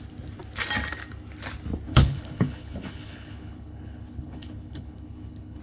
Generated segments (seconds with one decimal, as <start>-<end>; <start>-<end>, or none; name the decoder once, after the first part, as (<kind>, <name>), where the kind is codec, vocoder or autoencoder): 1.9-5.6 (codec, HILCodec)

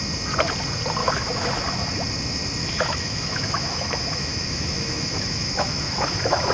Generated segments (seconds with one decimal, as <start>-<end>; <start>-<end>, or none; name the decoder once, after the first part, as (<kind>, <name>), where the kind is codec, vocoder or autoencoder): 1.0-1.5 (autoencoder, DAC-VAE); 2.6-6.5

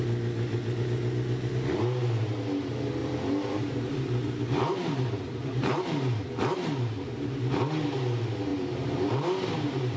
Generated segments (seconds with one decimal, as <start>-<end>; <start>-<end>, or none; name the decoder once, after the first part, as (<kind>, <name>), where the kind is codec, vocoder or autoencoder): 3.0-6.2 (vocoder, BigVGAN v2); 8.5-10.0

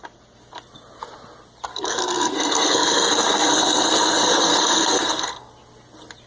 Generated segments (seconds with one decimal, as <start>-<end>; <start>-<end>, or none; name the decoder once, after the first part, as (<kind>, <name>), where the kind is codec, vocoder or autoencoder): 1.7-5.5 (codec, SNAC)

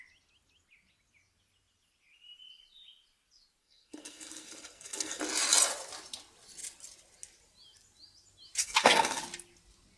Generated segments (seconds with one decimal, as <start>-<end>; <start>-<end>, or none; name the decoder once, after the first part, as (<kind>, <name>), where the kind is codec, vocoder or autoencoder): 3.6-5.2 (codec, SNAC); 8.6-9.2